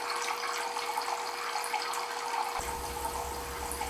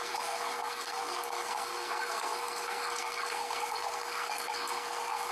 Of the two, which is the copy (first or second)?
second